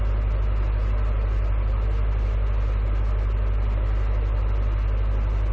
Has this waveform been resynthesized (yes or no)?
no